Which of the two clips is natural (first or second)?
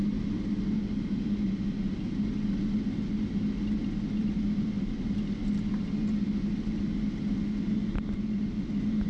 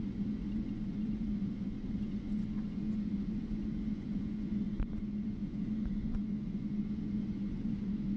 first